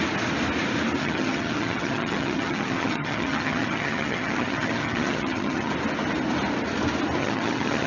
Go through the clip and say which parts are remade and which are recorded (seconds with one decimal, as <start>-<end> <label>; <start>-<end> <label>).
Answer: 0.0-1.0 recorded; 1.0-5.7 remade; 5.7-7.2 recorded; 7.2-7.9 remade